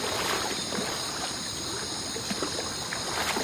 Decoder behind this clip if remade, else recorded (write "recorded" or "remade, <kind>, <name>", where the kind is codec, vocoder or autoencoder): recorded